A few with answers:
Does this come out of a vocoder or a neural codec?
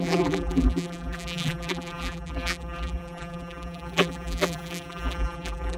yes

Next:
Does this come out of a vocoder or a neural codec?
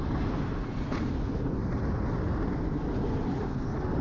no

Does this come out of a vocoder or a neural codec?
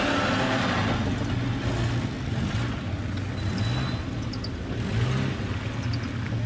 no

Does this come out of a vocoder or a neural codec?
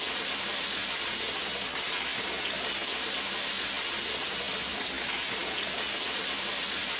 no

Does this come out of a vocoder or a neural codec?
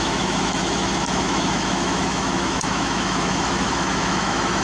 yes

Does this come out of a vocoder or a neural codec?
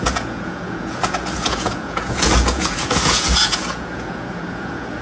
yes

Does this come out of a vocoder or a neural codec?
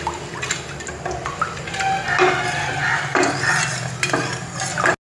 no